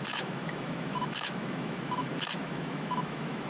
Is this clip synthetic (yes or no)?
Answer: yes